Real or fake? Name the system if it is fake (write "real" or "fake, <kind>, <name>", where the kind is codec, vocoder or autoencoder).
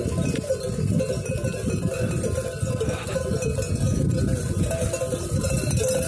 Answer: real